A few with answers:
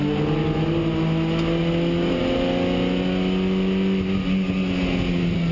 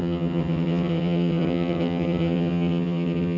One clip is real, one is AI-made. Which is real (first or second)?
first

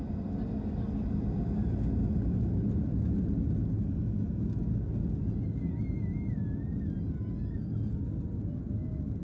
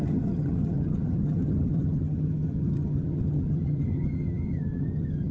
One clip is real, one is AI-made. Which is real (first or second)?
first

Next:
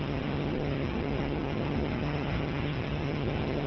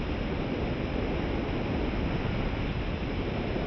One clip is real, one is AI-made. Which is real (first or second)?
second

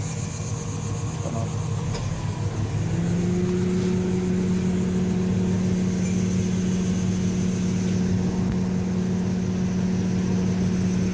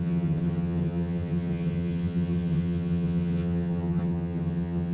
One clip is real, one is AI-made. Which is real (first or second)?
first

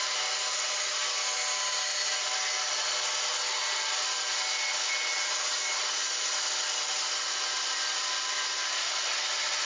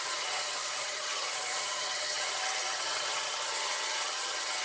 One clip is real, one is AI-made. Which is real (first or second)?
first